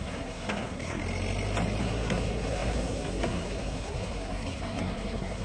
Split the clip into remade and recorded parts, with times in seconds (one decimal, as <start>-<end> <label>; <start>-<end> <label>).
0.0-1.0 remade; 1.0-1.8 recorded; 1.8-5.4 remade

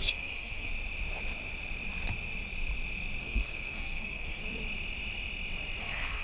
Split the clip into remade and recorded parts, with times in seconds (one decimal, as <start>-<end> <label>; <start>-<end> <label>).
0.0-0.7 remade; 0.7-3.2 recorded; 3.2-4.4 remade; 4.4-5.8 recorded; 5.8-6.2 remade

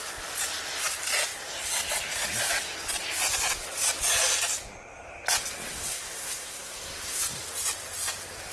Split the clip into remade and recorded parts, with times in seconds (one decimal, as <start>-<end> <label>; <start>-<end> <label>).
0.0-5.7 recorded; 5.7-7.2 remade; 7.2-8.5 recorded

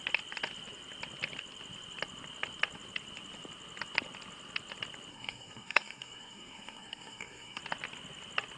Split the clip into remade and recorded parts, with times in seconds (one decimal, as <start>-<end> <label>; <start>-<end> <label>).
0.0-5.1 recorded; 5.1-7.6 remade; 7.6-8.6 recorded

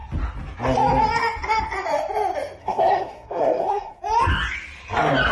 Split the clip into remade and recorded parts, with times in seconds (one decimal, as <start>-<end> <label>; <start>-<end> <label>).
0.0-2.6 recorded; 2.6-4.0 remade; 4.0-5.3 recorded